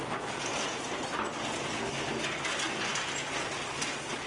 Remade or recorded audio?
recorded